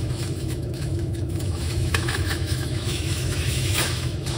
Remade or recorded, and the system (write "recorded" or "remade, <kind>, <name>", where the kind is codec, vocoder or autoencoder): remade, autoencoder, DAC-VAE